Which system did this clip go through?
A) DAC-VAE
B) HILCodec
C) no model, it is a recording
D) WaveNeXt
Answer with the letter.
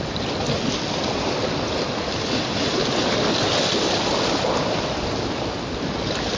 C